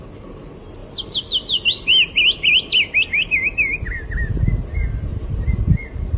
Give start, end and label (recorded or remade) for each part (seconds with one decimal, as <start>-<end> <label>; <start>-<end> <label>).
0.0-0.8 recorded; 0.8-4.4 remade; 4.4-5.1 recorded; 5.1-5.6 remade; 5.6-6.2 recorded